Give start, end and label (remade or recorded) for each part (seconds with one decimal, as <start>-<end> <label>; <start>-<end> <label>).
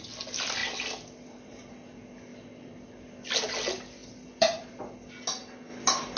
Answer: 0.0-2.3 recorded; 2.3-3.5 remade; 3.5-4.0 recorded; 4.0-4.8 remade; 4.8-6.2 recorded